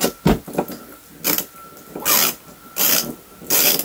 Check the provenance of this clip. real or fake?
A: real